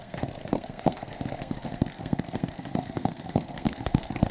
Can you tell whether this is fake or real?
fake